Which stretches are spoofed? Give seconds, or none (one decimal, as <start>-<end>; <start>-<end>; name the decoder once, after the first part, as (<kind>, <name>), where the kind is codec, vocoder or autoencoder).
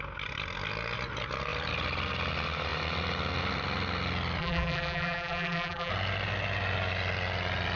4.4-5.9 (vocoder, BigVGAN v2)